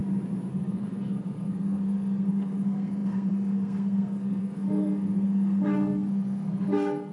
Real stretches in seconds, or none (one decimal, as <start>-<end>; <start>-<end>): 0.0-0.5